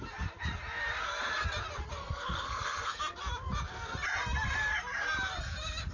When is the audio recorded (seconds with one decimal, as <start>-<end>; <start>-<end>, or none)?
0.0-2.0; 3.0-5.9